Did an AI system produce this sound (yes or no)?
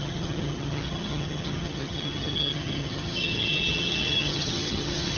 yes